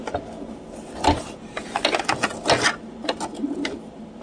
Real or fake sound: real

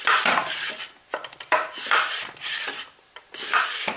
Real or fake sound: real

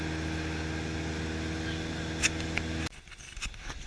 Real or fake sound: real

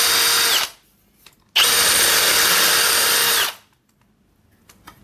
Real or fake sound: real